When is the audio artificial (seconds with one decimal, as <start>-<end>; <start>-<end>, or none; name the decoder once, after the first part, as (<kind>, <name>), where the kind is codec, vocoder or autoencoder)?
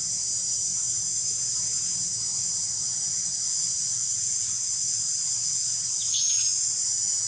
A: 2.3-6.2 (vocoder, BigVGAN v2)